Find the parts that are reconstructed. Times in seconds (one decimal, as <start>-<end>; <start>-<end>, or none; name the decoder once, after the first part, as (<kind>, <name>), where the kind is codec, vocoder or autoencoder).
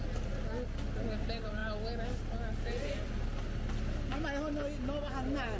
none